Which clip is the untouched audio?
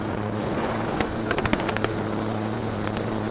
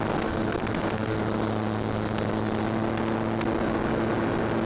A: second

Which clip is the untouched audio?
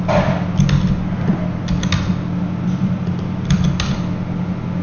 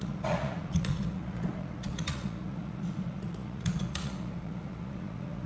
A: first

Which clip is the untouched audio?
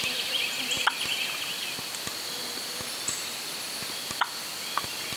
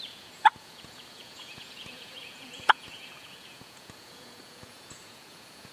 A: first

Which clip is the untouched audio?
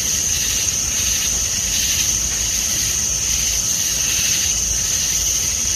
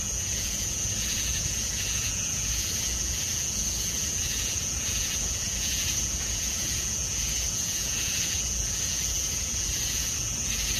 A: first